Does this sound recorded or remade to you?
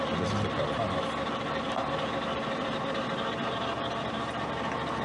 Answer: recorded